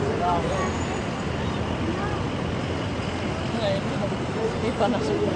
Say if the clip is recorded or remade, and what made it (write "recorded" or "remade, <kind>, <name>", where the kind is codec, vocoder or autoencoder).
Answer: recorded